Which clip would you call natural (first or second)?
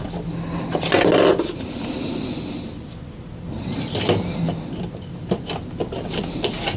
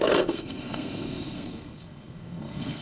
first